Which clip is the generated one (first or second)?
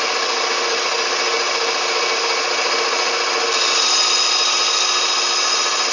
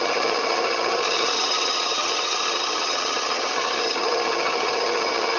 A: second